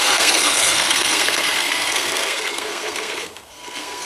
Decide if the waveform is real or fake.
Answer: fake